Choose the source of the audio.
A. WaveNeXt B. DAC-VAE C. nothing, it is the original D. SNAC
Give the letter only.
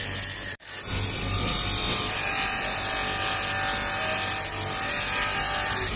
C